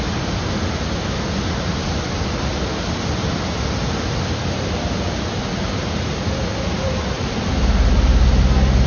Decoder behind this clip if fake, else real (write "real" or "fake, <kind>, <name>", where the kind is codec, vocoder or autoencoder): real